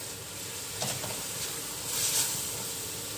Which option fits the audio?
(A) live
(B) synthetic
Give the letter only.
A